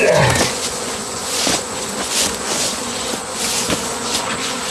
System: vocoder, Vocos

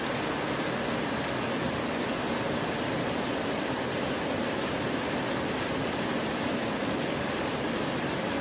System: none